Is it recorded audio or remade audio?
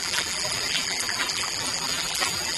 remade